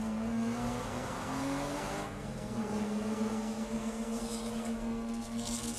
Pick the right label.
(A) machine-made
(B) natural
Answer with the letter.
A